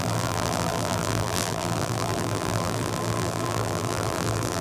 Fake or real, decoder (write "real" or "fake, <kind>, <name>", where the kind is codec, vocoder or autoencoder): fake, vocoder, BigVGAN v2